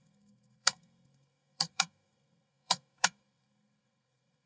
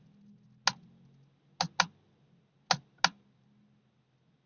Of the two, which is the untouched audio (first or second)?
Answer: second